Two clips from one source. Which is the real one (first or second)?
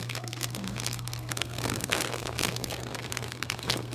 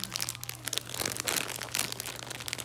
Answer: second